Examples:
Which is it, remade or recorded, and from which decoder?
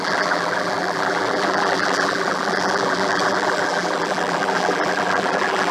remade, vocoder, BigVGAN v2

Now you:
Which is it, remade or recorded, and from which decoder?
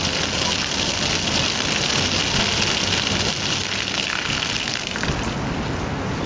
recorded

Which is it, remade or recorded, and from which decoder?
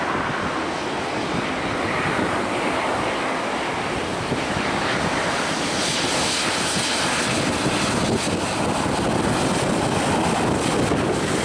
recorded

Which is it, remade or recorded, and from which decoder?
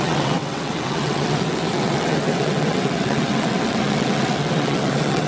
remade, vocoder, WaveNeXt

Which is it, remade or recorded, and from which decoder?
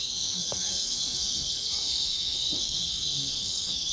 remade, codec, SNAC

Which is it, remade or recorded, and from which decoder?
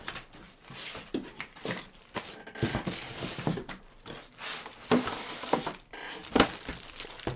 remade, vocoder, BigVGAN v2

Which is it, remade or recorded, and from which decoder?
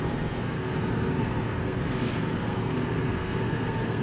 remade, codec, SNAC